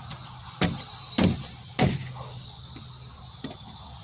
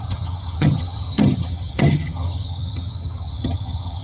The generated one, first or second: second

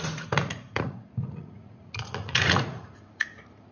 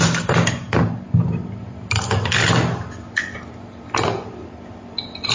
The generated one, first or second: first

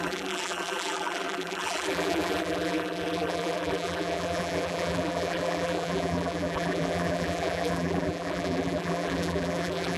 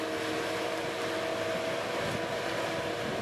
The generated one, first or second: first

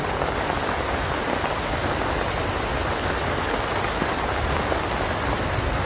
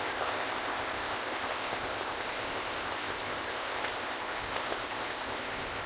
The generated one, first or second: second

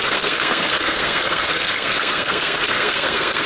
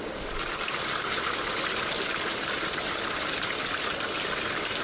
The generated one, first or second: first